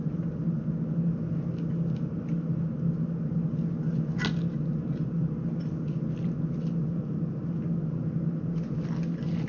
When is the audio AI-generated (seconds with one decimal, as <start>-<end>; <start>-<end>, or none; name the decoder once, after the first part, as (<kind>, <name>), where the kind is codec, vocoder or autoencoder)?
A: none